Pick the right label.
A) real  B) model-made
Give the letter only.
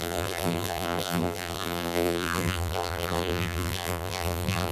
B